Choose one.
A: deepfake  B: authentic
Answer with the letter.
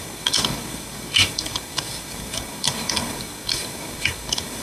A